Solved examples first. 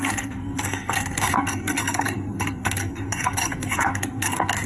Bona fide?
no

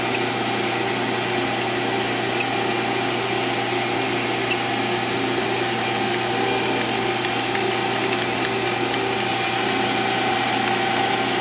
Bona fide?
yes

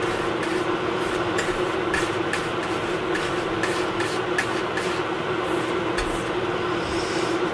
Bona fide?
yes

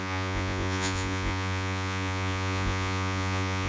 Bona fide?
no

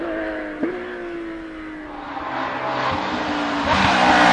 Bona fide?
yes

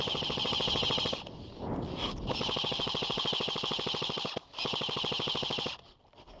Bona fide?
yes